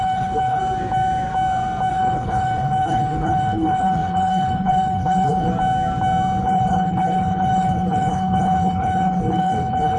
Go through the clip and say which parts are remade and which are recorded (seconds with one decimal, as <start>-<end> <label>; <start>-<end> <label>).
0.0-0.6 remade; 0.6-1.9 recorded; 1.9-5.5 remade; 5.5-6.4 recorded; 6.4-10.0 remade